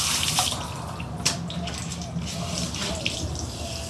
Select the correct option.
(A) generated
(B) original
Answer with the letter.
B